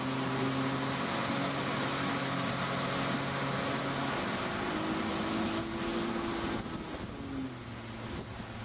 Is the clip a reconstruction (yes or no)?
no